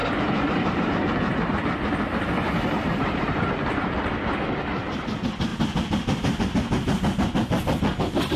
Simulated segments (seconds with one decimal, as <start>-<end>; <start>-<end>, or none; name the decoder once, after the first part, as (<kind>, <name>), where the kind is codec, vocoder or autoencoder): 0.0-0.9 (vocoder, BigVGAN v2)